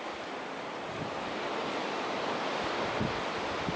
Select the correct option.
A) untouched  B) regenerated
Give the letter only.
A